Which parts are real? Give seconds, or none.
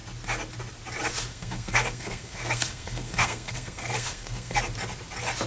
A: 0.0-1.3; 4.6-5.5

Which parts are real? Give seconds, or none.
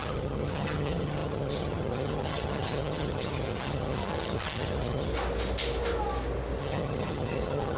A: 5.1-6.6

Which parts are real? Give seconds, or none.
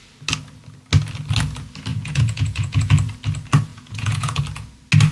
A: 0.0-1.9; 2.9-3.7; 4.4-5.1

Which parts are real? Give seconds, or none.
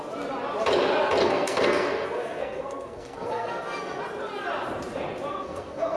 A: 0.0-1.2; 4.0-5.3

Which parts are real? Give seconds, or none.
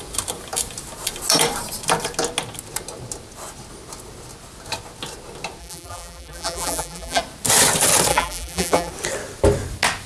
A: 0.0-5.6; 7.2-8.1; 8.9-10.1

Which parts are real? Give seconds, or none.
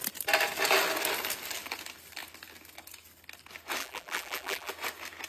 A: 0.0-3.8; 4.7-5.3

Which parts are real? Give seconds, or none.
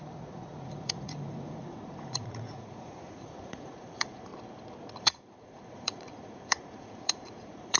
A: 4.3-5.0